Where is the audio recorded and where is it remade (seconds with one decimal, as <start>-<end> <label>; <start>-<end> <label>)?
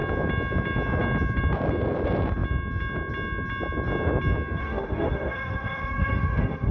0.0-4.6 recorded; 4.6-6.7 remade